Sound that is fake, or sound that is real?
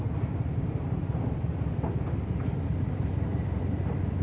fake